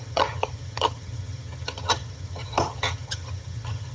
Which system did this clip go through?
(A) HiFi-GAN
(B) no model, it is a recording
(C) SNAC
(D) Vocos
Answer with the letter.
A